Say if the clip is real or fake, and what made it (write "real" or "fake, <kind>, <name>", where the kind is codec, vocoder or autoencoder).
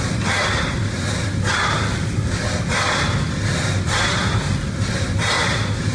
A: real